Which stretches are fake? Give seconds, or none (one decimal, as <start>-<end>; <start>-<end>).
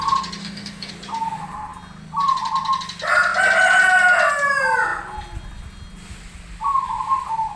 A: 0.4-0.9